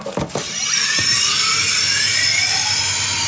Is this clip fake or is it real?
real